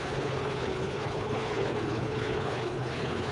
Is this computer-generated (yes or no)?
yes